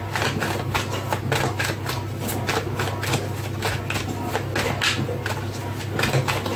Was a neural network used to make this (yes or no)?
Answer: no